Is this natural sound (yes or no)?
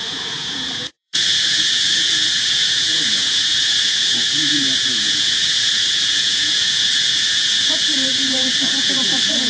no